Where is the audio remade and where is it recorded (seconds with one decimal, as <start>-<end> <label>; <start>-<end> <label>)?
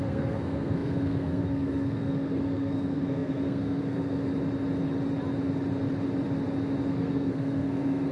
0.0-4.3 remade; 4.3-6.9 recorded; 6.9-8.1 remade